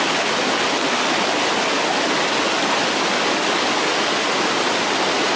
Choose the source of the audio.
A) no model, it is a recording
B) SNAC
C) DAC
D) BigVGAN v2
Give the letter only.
A